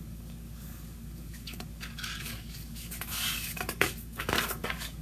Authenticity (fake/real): fake